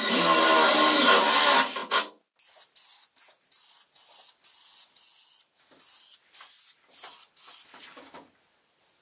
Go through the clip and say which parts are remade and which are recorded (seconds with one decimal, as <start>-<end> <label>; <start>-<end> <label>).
0.0-9.0 recorded